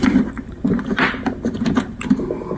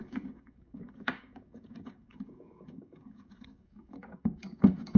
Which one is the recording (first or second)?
first